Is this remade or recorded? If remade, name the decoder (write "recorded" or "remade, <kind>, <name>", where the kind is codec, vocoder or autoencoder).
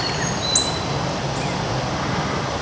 recorded